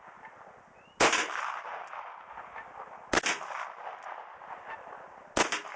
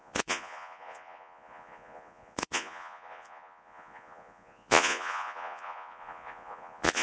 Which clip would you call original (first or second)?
first